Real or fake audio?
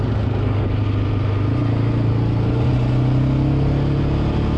real